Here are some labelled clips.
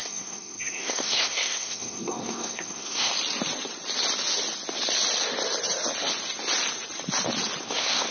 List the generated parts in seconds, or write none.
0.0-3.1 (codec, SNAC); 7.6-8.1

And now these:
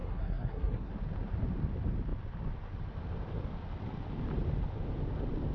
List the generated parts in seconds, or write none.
0.0-0.9 (codec, SNAC)

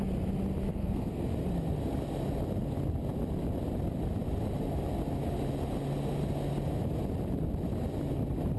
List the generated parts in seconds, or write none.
0.7-1.2 (codec, SNAC)

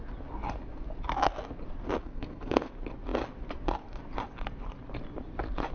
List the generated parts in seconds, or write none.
2.0-2.7 (codec, SNAC)

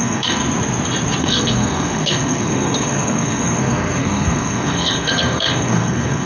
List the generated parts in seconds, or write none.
0.0-0.4 (codec, SNAC); 1.2-6.3

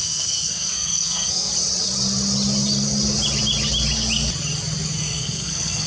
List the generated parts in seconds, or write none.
0.0-1.5 (codec, SNAC); 5.0-5.9

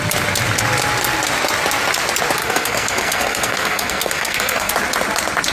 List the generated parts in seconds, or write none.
2.4-4.7 (codec, SNAC)

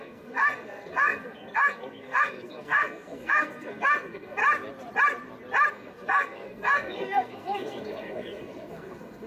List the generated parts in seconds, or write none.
0.0-4.4 (codec, SNAC); 5.7-9.3